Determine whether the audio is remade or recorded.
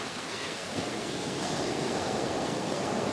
remade